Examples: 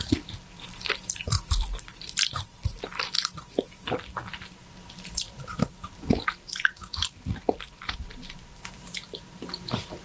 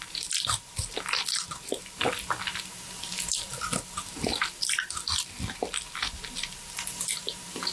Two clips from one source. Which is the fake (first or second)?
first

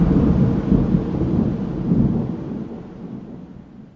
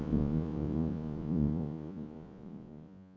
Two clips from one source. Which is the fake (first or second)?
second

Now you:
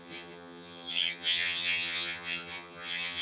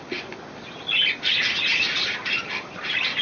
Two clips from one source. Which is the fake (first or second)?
first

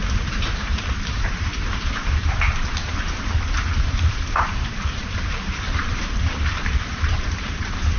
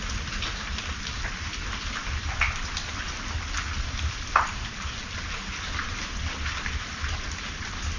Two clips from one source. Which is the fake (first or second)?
first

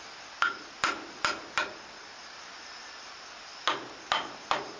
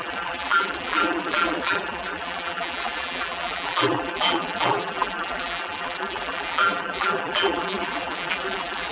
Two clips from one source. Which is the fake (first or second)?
second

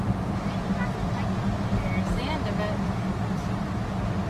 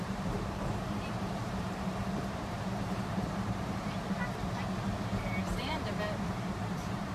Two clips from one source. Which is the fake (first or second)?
second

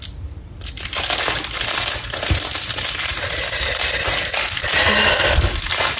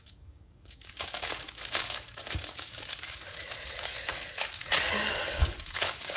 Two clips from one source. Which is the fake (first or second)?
second